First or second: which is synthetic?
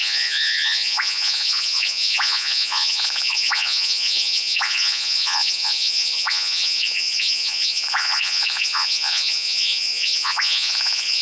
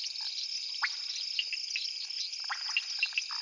first